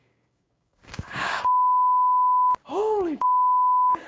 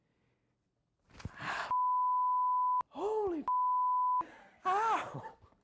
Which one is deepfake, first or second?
first